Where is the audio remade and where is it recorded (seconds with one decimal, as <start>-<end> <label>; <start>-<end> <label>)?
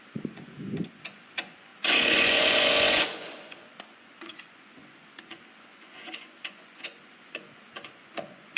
0.0-8.6 remade